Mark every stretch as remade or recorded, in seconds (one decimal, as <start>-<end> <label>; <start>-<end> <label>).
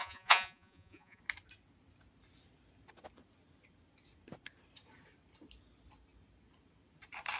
0.0-1.2 remade; 1.2-7.4 recorded